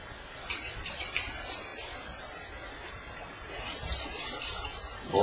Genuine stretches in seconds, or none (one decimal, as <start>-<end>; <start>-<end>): 1.7-4.4